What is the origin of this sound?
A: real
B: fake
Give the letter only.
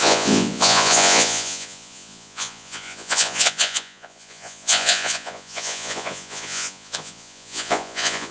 B